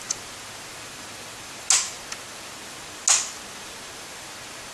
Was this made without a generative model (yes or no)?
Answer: yes